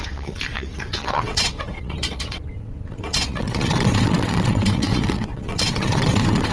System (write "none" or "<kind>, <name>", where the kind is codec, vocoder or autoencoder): vocoder, WaveNeXt